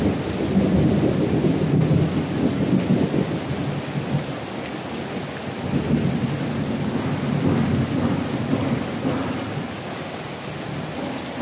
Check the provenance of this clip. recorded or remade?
recorded